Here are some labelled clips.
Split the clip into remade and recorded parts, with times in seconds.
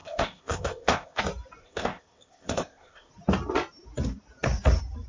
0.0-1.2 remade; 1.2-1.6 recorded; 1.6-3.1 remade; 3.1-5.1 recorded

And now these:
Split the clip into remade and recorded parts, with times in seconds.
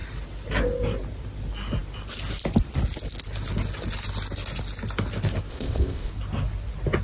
0.0-5.5 recorded; 5.5-6.1 remade; 6.1-7.0 recorded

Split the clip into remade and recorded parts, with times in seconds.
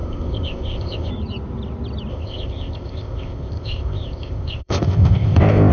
0.0-1.1 remade; 1.1-2.1 recorded; 2.1-5.7 remade